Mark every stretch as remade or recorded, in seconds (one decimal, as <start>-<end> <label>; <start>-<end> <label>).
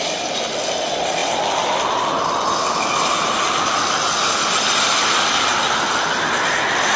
0.0-7.0 recorded